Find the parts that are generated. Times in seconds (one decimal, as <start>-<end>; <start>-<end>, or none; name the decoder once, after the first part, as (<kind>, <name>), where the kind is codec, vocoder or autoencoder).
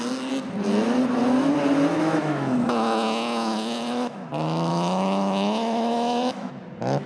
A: 1.9-4.3 (autoencoder, DAC-VAE); 4.7-6.5